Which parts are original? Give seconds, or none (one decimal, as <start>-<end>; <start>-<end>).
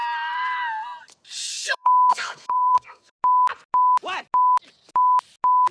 0.0-1.5; 3.1-5.7